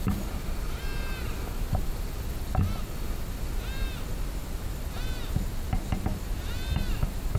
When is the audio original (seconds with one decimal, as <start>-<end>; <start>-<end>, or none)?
0.0-7.4